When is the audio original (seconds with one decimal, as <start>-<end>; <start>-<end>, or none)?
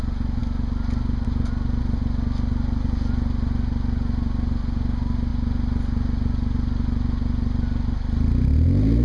0.0-9.0